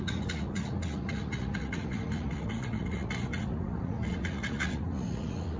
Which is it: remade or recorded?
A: remade